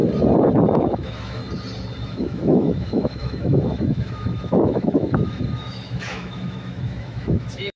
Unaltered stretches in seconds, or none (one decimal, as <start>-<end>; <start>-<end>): 0.0-0.8; 1.4-2.1